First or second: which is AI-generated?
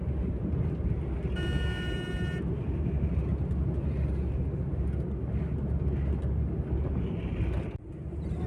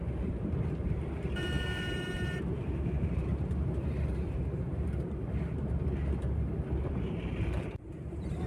second